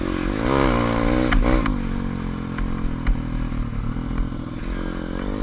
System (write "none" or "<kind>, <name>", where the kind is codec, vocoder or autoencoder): none